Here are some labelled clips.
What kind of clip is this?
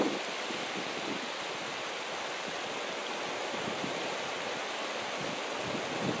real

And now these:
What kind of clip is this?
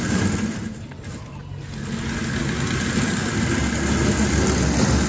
real